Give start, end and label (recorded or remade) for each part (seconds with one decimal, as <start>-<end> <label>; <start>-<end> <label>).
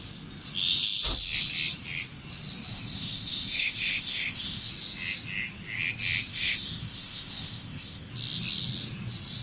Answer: 0.0-2.7 recorded; 2.7-4.7 remade; 4.7-6.3 recorded; 6.3-8.1 remade; 8.1-9.4 recorded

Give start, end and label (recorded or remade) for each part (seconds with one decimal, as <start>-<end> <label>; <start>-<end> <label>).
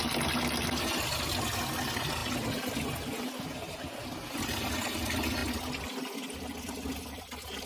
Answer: 0.0-7.7 recorded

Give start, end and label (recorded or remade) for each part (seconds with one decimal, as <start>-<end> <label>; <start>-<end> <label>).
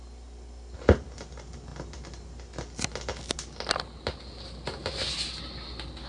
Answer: 0.0-6.1 recorded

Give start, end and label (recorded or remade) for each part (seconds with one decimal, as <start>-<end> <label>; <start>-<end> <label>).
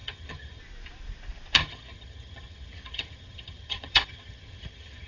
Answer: 0.0-0.6 remade; 0.6-1.6 recorded; 1.6-5.1 remade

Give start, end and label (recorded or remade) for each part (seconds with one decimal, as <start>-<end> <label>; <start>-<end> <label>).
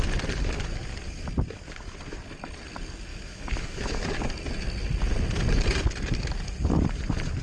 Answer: 0.0-3.1 recorded; 3.1-4.0 remade; 4.0-7.4 recorded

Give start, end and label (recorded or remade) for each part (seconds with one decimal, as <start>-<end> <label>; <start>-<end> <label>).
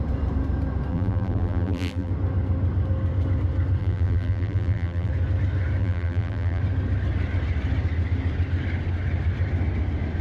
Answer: 0.0-0.9 recorded; 0.9-2.1 remade; 2.1-3.8 recorded; 3.8-5.1 remade; 5.1-5.8 recorded; 5.8-6.6 remade; 6.6-10.2 recorded